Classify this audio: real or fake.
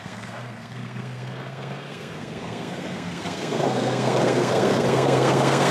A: fake